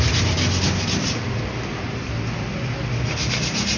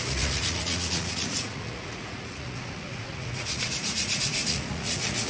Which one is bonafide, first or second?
first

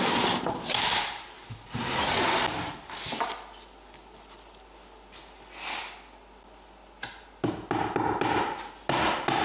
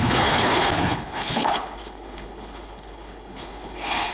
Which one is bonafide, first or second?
first